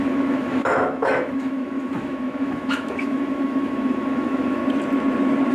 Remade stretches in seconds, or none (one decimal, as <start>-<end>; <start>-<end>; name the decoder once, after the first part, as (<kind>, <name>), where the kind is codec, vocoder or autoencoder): 0.0-4.6 (autoencoder, DAC-VAE)

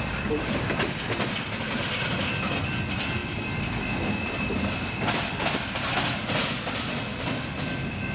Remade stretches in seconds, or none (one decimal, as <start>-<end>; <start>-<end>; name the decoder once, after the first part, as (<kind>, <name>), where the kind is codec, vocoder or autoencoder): none

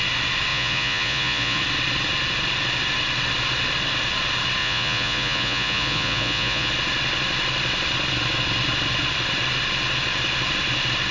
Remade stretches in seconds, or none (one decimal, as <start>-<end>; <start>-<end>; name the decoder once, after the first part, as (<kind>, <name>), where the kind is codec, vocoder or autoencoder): 0.5-1.6 (vocoder, Vocos); 4.6-6.7